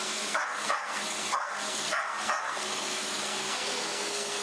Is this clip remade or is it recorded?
remade